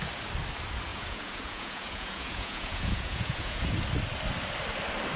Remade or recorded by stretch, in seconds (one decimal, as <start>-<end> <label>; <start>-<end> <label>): 0.0-0.9 recorded; 0.9-3.7 remade; 3.7-5.2 recorded